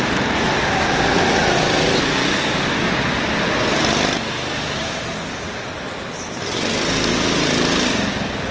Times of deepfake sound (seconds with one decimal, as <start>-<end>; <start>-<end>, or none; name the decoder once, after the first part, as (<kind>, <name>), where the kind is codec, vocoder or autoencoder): none